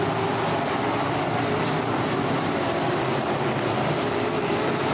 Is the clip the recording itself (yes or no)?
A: yes